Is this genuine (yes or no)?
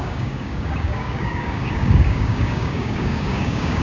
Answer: no